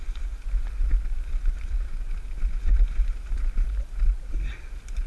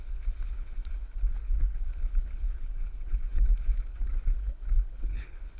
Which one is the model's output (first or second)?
second